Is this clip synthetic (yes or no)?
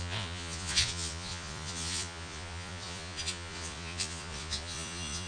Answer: yes